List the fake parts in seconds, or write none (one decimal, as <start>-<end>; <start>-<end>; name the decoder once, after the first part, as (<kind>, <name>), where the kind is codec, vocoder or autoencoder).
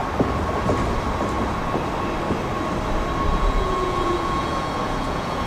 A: 3.3-5.5 (vocoder, Vocos)